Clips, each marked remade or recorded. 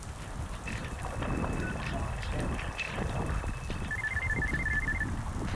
recorded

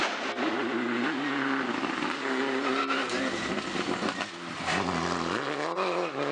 recorded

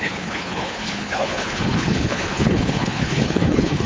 remade